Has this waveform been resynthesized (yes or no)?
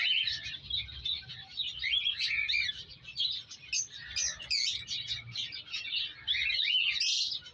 no